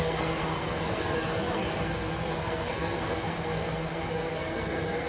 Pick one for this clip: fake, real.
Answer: fake